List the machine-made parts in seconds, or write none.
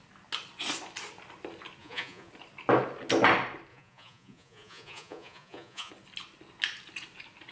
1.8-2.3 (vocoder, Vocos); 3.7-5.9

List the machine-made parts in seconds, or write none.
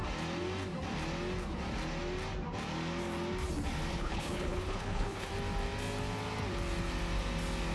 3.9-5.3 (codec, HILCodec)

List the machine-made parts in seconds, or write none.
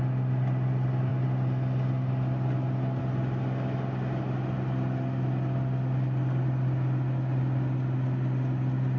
none